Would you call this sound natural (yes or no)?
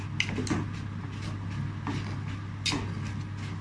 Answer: yes